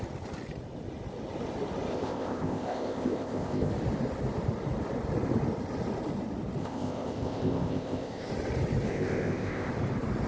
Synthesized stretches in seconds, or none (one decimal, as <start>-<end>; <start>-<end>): 1.9-3.7; 6.6-8.3; 8.9-9.7